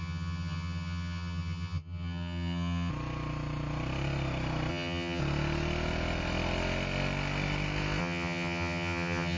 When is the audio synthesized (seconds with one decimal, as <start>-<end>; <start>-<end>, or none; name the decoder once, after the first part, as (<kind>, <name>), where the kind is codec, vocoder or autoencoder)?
0.0-2.9 (vocoder, HiFi-GAN); 4.7-5.2; 8.0-9.4